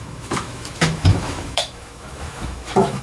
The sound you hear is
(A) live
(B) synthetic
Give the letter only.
B